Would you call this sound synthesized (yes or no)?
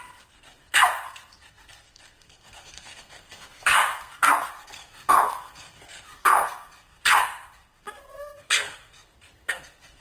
yes